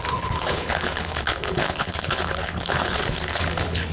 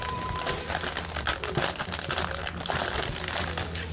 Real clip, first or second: second